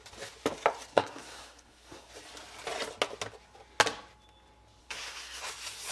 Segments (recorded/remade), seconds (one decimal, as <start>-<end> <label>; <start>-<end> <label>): 0.0-0.9 recorded; 0.9-2.1 remade; 2.1-4.8 recorded; 4.8-5.4 remade; 5.4-5.9 recorded